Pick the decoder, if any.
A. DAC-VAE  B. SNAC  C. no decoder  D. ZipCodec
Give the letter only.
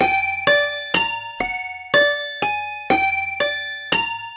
C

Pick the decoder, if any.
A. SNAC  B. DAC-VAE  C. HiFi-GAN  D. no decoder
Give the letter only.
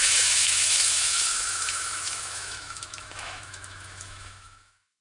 B